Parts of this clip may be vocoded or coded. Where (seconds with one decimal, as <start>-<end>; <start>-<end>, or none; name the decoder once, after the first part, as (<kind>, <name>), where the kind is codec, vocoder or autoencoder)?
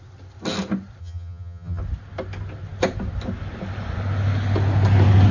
1.0-1.8 (vocoder, HiFi-GAN)